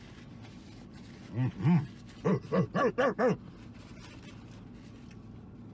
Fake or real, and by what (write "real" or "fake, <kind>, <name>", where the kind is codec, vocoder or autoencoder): real